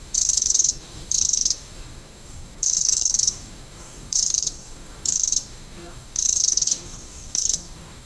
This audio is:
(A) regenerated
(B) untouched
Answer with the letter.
A